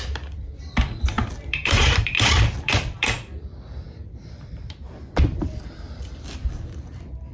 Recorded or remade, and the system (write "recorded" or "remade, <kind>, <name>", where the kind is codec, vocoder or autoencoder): remade, vocoder, BigVGAN v2